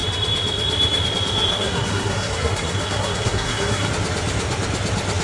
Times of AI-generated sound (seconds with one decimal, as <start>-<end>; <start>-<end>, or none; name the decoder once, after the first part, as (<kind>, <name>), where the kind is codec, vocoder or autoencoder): 1.5-3.9 (codec, SNAC)

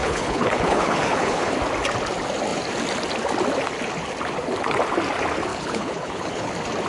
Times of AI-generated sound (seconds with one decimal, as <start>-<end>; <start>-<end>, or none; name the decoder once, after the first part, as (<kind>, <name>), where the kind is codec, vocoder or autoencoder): 0.0-1.5 (codec, HILCodec); 5.5-6.5